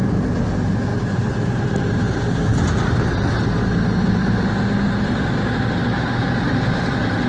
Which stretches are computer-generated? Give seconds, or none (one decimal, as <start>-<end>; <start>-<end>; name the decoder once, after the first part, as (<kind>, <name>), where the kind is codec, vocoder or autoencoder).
0.9-1.8 (vocoder, BigVGAN v2); 5.8-7.3